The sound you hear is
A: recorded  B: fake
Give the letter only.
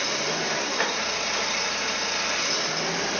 A